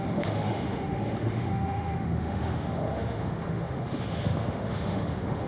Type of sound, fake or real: fake